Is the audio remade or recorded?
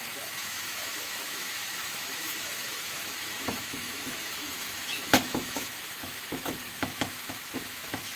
remade